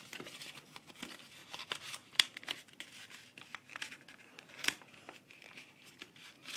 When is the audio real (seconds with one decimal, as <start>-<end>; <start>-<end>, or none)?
0.0-1.4; 2.4-4.2; 4.8-6.6